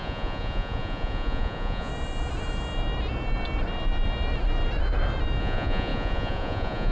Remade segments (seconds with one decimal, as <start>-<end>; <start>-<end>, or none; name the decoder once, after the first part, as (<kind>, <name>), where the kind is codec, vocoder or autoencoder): 0.0-1.9 (vocoder, Vocos); 5.4-6.9